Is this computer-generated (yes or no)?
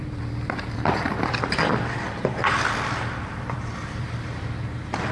yes